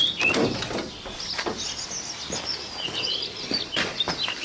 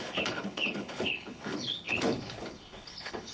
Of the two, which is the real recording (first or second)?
first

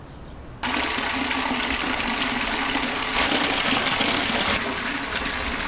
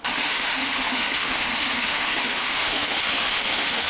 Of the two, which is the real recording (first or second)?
first